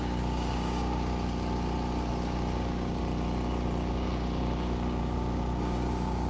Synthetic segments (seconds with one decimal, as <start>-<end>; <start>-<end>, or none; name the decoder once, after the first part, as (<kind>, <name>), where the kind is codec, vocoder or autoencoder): 0.0-1.1 (codec, DAC); 2.1-3.0; 3.9-6.3